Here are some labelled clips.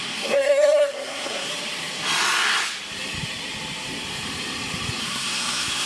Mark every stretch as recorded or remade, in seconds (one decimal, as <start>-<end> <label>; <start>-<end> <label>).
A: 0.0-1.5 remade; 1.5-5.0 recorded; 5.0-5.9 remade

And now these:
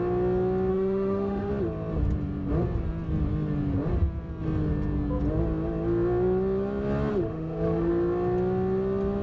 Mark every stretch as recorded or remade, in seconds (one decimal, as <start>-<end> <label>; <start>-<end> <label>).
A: 0.0-0.7 recorded; 0.7-1.5 remade; 1.5-7.1 recorded; 7.1-7.9 remade; 7.9-9.2 recorded

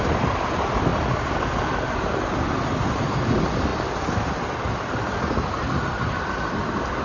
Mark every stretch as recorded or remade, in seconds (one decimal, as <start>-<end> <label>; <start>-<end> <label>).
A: 0.0-7.0 recorded

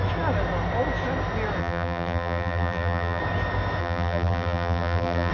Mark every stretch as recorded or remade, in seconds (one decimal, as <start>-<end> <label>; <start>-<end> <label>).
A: 0.0-1.6 recorded; 1.6-3.2 remade; 3.2-3.8 recorded; 3.8-5.3 remade